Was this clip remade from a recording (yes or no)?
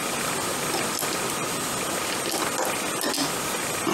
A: no